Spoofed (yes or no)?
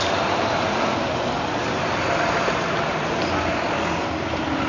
no